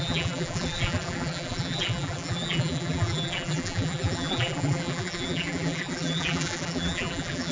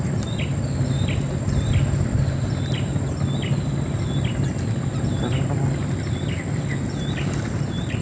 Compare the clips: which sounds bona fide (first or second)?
second